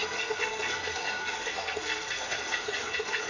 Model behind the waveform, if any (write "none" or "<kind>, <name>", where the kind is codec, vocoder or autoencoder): codec, SNAC